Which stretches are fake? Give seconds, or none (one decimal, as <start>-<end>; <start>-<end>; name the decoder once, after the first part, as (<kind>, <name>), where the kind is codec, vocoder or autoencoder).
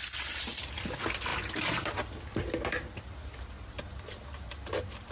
none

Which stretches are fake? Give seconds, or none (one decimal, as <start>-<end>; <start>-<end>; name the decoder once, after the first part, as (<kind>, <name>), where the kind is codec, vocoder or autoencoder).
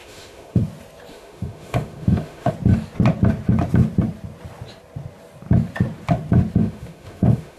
0.0-0.6 (autoencoder, DAC-VAE); 1.1-2.5; 6.6-7.6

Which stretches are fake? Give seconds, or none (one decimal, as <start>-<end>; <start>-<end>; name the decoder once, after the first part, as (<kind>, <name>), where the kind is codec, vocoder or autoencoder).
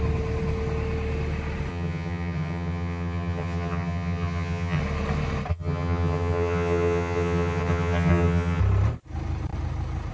1.7-4.8 (vocoder, HiFi-GAN); 5.5-8.6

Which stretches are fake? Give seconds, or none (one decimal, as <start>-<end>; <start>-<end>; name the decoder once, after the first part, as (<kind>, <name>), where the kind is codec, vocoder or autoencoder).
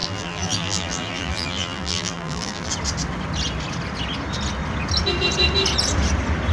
0.0-2.7 (vocoder, BigVGAN v2)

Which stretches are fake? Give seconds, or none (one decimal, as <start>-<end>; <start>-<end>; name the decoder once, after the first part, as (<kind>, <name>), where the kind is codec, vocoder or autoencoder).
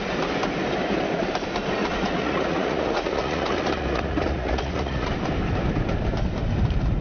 1.8-5.1 (vocoder, Vocos)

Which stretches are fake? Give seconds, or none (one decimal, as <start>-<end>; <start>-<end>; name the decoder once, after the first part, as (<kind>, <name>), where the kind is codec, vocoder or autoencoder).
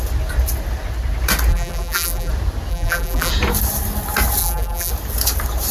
1.5-2.3 (vocoder, BigVGAN v2); 2.7-3.3; 4.4-4.9